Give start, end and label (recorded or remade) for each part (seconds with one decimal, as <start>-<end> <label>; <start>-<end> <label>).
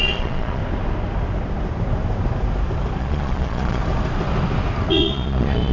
0.0-0.6 remade; 0.6-3.0 recorded; 3.0-3.8 remade; 3.8-4.9 recorded; 4.9-5.7 remade